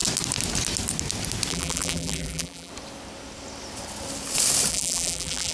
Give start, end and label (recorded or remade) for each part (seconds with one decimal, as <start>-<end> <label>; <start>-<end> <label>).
0.0-1.5 recorded; 1.5-2.7 remade; 2.7-4.7 recorded; 4.7-5.5 remade